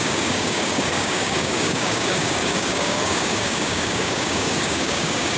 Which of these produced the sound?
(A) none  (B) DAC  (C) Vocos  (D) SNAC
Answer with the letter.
B